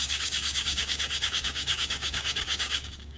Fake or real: fake